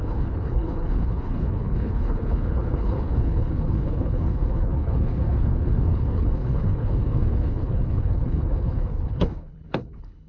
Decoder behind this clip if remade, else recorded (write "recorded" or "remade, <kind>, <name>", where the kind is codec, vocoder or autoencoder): remade, codec, HILCodec